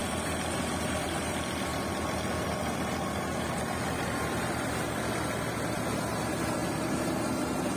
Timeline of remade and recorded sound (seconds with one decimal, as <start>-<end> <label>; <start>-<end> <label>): 0.0-6.6 recorded; 6.6-7.8 remade